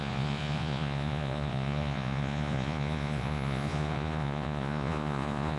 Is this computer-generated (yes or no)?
yes